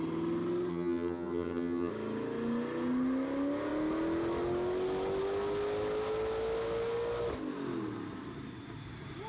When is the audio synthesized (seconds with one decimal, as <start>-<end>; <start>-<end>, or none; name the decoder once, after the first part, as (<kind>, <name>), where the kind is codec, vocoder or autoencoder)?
0.7-1.9 (vocoder, HiFi-GAN)